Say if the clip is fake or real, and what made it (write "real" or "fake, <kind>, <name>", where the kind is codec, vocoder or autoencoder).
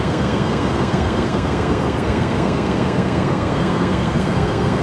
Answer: fake, codec, SNAC